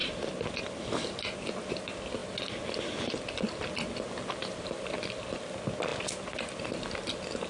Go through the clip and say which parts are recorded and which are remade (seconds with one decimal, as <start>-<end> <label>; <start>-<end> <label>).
0.0-7.5 recorded

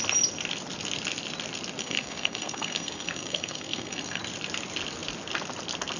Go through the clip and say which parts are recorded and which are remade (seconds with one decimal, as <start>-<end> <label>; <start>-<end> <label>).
0.0-1.8 recorded; 1.8-4.2 remade; 4.2-6.0 recorded